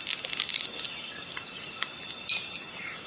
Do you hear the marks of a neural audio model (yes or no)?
no